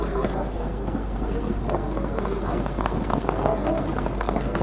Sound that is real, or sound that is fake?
fake